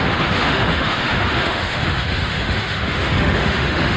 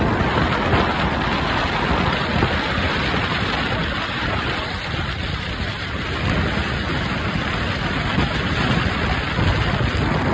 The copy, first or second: first